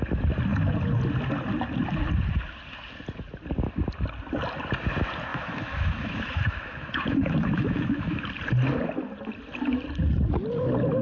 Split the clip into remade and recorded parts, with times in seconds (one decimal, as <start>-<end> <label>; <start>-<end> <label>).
0.0-5.3 recorded; 5.3-8.2 remade; 8.2-11.0 recorded